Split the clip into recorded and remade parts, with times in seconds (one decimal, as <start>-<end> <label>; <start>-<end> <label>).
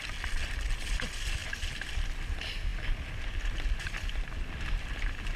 0.0-1.4 recorded; 1.4-2.0 remade; 2.0-5.4 recorded